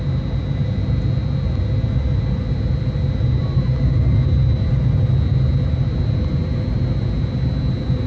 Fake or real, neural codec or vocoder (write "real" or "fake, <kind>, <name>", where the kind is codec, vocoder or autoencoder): real